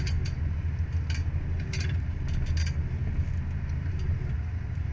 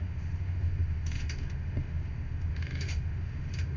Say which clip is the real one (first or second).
first